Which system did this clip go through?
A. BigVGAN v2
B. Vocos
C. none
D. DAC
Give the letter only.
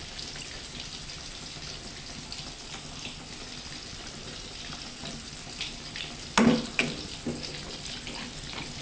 C